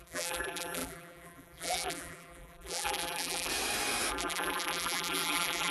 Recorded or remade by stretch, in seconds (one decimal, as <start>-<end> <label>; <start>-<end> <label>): 0.0-3.5 remade; 3.5-4.1 recorded; 4.1-5.7 remade